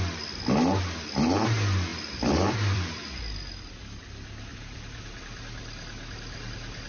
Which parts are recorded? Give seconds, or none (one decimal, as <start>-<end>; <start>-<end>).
0.0-1.9; 3.2-4.5; 5.2-6.9